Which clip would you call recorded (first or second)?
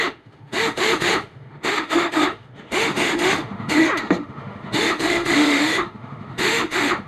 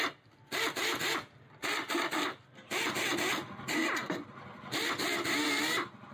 second